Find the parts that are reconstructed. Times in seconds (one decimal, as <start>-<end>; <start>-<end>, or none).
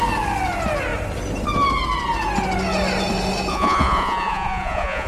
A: 3.5-5.1